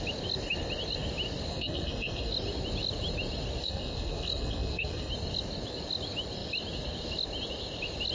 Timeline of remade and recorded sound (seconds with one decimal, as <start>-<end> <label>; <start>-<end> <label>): 0.0-1.5 recorded; 1.5-2.3 remade; 2.3-3.6 recorded; 3.6-5.1 remade; 5.1-8.1 recorded